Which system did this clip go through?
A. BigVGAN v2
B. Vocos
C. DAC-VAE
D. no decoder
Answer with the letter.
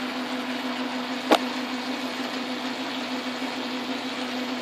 D